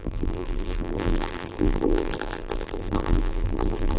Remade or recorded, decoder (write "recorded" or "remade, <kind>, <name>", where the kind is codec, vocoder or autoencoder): remade, vocoder, BigVGAN v2